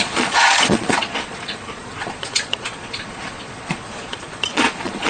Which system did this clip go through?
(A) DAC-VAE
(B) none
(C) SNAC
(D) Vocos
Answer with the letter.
D